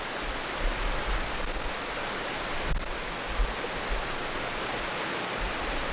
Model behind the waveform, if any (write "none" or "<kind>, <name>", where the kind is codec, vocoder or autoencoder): none